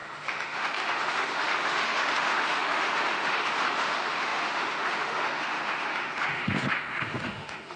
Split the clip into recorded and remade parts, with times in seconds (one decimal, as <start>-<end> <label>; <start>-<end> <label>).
0.0-7.8 remade